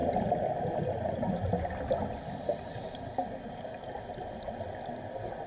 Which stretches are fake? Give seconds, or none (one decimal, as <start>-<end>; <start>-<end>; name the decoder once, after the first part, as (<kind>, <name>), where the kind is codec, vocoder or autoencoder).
none